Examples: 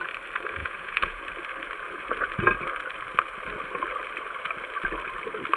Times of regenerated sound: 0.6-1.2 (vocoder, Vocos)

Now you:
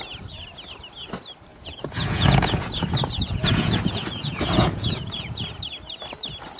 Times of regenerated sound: 1.5-5.5 (vocoder, Vocos)

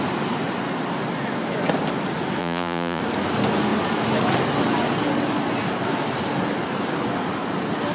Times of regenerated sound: 2.4-3.0 (vocoder, Vocos)

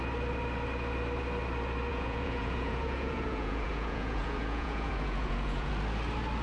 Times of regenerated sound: 1.9-5.7 (vocoder, Vocos)

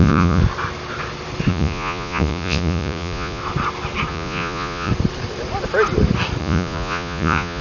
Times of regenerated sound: 0.0-0.4 (vocoder, Vocos); 1.5-3.4; 4.1-4.9; 6.4-7.6